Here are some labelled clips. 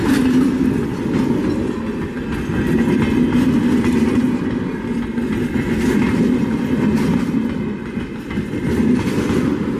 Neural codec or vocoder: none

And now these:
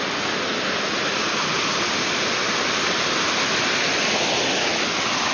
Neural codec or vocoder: none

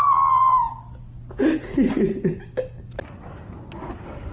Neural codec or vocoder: none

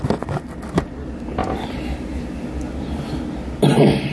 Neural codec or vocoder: none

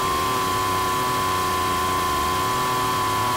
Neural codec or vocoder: none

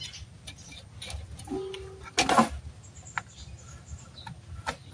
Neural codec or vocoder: none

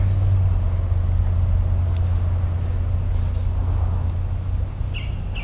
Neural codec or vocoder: none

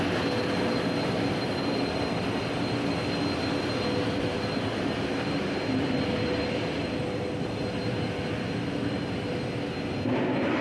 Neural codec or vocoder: none